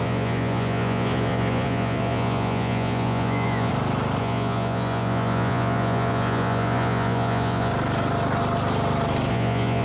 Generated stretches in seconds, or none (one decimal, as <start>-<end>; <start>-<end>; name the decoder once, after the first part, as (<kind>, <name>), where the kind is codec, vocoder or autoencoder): 0.0-3.7 (vocoder, Vocos); 4.2-7.7; 9.3-9.8